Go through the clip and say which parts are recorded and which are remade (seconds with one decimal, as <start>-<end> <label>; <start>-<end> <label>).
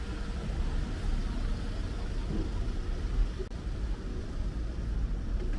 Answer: 0.0-5.6 recorded